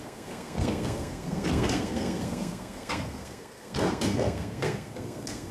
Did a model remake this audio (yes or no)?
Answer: yes